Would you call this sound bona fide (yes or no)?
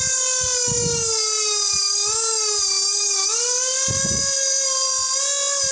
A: yes